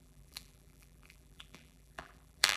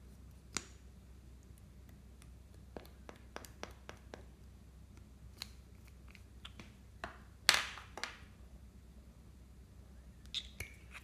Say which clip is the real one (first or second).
second